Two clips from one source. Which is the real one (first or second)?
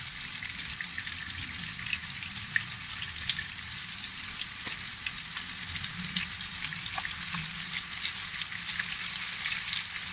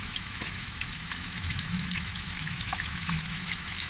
first